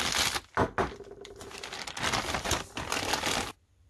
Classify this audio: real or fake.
real